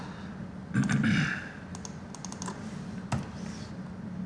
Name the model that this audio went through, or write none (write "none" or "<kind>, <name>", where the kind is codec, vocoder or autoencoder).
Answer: none